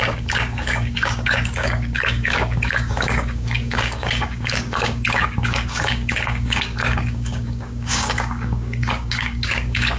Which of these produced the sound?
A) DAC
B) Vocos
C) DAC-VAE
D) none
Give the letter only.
A